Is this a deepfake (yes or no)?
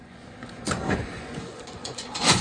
yes